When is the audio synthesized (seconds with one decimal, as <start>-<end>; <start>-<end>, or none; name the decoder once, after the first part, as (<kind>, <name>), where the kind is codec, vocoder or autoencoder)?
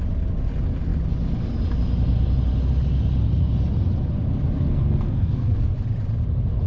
4.7-5.7 (codec, SNAC)